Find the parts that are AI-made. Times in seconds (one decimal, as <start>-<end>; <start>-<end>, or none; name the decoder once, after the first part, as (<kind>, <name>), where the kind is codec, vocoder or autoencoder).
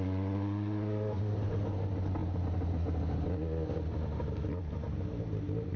2.2-2.7 (vocoder, BigVGAN v2)